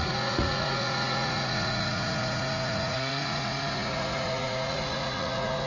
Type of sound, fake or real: fake